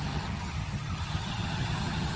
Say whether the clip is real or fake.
fake